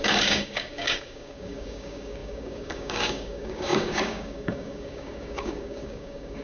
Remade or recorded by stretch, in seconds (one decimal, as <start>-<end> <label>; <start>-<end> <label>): 0.0-6.4 remade